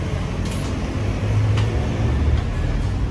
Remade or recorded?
recorded